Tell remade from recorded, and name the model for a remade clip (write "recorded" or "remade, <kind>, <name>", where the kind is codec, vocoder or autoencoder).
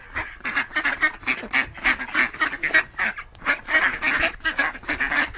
recorded